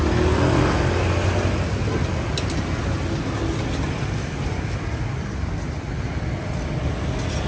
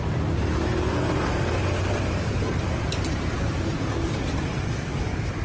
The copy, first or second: second